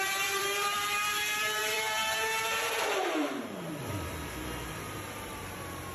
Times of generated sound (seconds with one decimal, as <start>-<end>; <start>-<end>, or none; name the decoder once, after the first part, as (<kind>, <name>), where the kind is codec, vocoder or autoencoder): 0.0-5.9 (vocoder, BigVGAN v2)